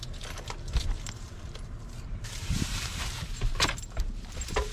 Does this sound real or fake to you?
fake